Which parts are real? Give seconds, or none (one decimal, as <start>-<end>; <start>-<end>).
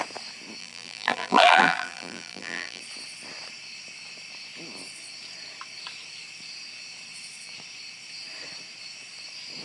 0.0-0.6; 2.8-9.6